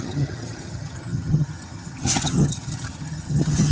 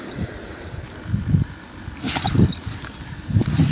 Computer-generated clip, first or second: first